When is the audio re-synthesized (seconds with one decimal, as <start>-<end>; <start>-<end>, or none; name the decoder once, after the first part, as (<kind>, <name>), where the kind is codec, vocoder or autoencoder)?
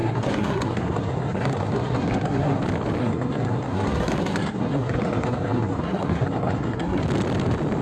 0.0-2.6 (codec, SNAC); 3.0-7.0